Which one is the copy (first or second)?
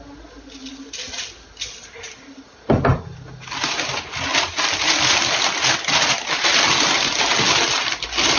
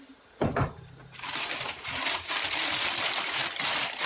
second